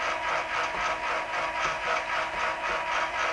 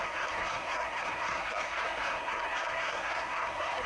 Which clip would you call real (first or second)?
first